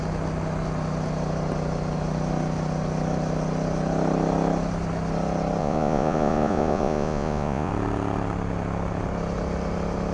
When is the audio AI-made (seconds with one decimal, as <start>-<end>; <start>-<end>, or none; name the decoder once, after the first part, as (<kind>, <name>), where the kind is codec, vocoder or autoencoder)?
5.6-7.7 (vocoder, Vocos)